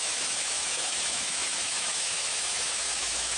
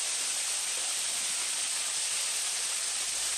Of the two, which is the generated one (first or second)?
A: first